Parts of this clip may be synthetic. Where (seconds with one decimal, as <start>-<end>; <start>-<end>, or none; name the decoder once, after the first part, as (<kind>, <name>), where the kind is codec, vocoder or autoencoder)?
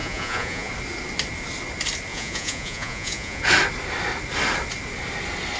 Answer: 0.0-0.7 (vocoder, Vocos); 2.1-3.4